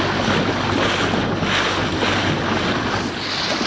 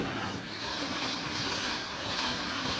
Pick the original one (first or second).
first